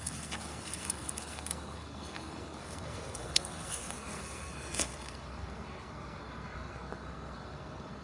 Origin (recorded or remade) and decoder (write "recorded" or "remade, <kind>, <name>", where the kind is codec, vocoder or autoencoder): remade, codec, SNAC